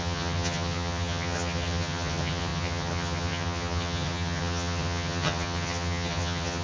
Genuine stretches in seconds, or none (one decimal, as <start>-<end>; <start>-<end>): none